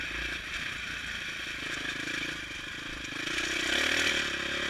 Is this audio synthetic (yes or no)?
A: no